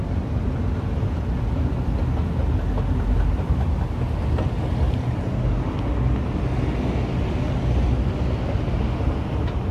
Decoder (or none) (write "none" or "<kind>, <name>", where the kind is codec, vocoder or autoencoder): none